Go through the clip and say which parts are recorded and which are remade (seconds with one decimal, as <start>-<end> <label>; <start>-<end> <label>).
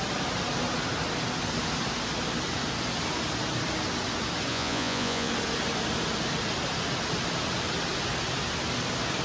0.0-4.5 recorded; 4.5-5.3 remade; 5.3-9.2 recorded